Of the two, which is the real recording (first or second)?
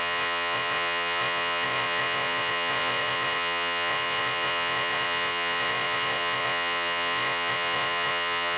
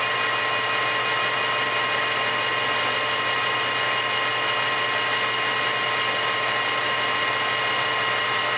second